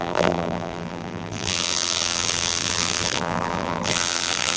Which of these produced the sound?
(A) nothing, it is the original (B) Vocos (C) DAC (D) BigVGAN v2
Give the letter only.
D